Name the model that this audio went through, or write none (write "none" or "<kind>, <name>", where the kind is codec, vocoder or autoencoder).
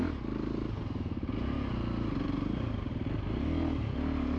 none